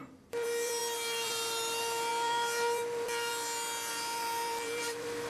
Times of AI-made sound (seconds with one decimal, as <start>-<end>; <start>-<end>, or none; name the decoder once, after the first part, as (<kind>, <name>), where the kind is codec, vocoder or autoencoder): 0.0-3.3 (vocoder, BigVGAN v2); 3.9-5.3